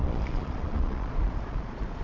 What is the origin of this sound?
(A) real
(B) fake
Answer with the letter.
B